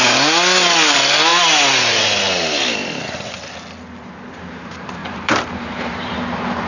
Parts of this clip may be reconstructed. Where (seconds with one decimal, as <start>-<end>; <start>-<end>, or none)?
5.0-5.9